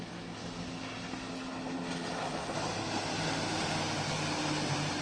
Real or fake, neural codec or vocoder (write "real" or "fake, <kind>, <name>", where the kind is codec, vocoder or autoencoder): real